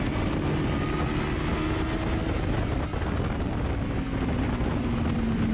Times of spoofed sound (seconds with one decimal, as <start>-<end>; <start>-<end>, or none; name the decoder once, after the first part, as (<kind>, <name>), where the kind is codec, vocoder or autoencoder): none